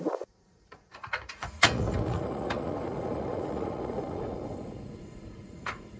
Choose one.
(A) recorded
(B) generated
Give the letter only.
B